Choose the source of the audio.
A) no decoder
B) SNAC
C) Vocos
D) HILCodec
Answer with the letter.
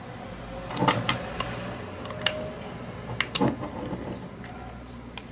A